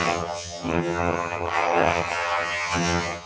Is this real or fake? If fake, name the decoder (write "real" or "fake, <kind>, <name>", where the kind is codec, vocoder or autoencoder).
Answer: fake, vocoder, HiFi-GAN